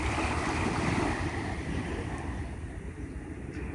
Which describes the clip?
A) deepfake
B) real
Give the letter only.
B